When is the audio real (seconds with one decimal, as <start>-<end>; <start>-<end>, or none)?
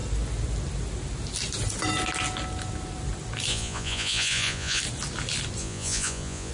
0.0-3.5; 4.8-5.6